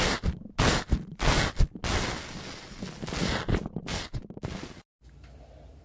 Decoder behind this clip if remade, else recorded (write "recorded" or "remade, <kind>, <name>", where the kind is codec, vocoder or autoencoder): recorded